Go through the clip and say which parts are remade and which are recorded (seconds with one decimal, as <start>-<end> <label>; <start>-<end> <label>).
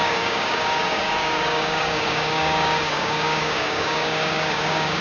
0.0-5.0 remade